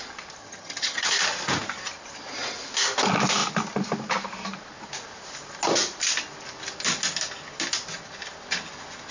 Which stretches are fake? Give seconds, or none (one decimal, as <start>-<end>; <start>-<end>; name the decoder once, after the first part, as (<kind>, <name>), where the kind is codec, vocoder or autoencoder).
0.4-1.1 (vocoder, HiFi-GAN)